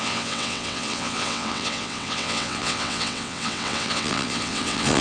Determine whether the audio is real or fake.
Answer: fake